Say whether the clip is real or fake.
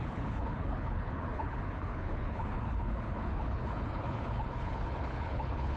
fake